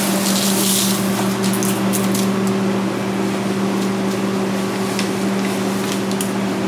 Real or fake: real